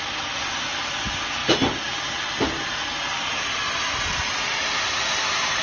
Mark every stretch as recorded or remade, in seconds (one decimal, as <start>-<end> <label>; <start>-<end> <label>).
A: 0.0-5.6 recorded